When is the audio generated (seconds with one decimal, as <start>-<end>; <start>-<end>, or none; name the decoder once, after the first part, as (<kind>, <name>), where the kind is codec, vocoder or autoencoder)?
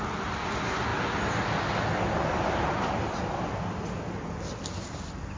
none